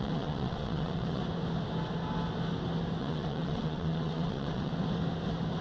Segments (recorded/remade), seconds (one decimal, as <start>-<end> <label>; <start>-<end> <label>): 0.0-1.2 remade; 1.2-3.0 recorded; 3.0-4.7 remade; 4.7-5.6 recorded